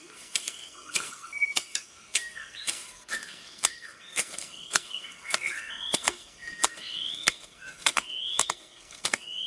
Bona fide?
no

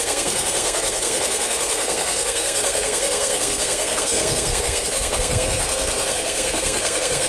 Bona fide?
no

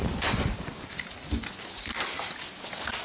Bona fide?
yes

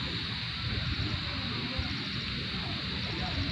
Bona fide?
yes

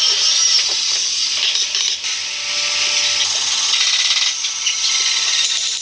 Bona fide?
yes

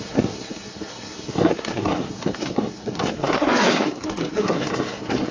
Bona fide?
no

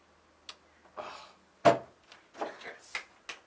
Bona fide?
yes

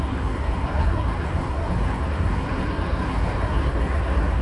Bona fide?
no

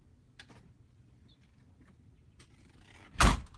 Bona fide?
yes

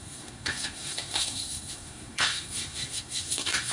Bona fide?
no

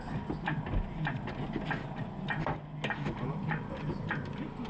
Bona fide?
yes